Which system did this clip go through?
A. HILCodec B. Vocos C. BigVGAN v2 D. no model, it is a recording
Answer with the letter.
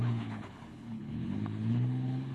A